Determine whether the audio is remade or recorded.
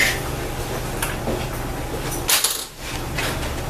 recorded